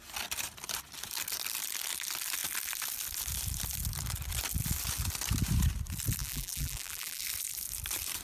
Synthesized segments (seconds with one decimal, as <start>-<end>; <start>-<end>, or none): 6.2-7.2

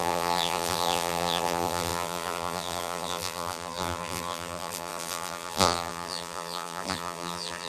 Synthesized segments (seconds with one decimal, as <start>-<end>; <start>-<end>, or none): 0.0-7.7

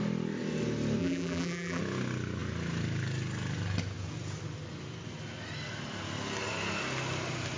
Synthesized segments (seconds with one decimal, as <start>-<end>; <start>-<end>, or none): 1.0-1.8